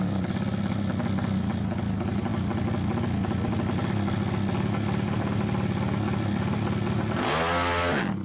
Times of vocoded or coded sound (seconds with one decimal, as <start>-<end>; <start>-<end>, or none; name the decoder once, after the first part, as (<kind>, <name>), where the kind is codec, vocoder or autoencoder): none